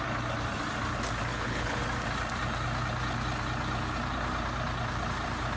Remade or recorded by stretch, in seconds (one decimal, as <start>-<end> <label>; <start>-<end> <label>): 0.0-1.3 recorded; 1.3-1.8 remade; 1.8-5.6 recorded